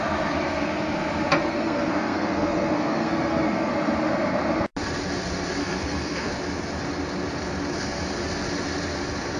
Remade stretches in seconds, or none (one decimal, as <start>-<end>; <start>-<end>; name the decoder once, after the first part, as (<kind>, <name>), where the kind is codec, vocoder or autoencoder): 1.5-3.7 (codec, SNAC); 5.6-6.3